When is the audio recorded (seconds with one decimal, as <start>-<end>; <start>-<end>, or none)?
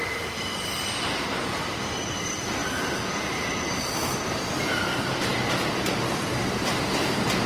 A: 0.0-2.6; 3.7-7.5